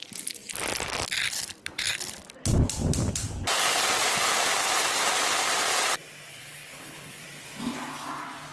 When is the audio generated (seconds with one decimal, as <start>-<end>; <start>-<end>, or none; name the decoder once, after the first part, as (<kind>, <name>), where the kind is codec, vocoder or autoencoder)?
6.3-7.2 (codec, HILCodec)